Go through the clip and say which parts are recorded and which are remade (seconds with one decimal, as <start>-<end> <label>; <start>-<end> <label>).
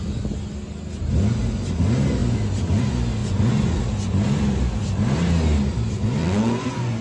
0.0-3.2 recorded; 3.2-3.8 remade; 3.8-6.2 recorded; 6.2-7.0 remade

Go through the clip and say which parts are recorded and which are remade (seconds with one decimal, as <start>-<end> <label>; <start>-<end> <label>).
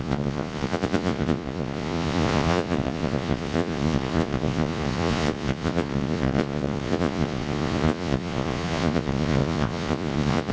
0.0-10.5 remade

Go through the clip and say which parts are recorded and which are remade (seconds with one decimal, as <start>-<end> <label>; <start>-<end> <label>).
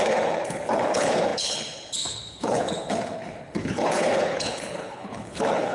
0.0-5.7 remade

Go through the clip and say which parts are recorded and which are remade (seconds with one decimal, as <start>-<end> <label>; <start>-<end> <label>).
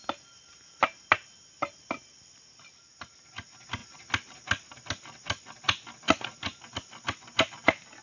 0.0-8.0 recorded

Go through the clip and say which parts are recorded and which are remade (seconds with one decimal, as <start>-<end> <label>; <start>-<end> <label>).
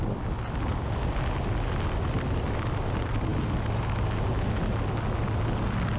0.0-6.0 recorded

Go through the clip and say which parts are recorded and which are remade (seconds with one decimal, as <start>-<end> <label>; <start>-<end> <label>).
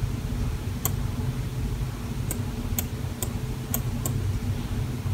0.0-5.1 recorded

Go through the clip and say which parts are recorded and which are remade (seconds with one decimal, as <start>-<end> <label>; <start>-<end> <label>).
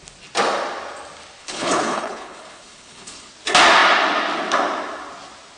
0.0-1.4 recorded; 1.4-3.3 remade; 3.3-5.6 recorded